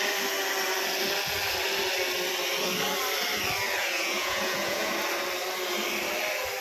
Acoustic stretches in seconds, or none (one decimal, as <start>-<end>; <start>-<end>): 0.0-3.8; 4.9-6.6